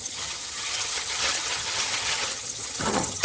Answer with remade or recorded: remade